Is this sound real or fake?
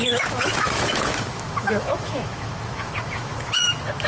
fake